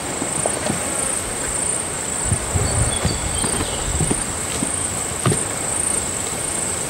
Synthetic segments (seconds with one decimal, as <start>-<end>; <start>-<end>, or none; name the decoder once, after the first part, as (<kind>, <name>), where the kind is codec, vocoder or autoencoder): 1.7-2.3 (vocoder, BigVGAN v2); 3.9-6.4